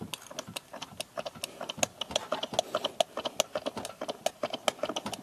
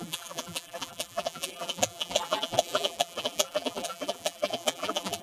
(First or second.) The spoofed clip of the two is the second